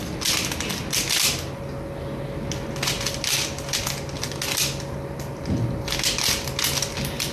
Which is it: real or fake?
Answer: real